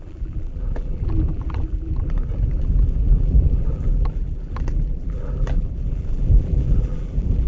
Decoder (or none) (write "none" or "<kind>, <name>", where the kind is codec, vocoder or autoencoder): vocoder, BigVGAN v2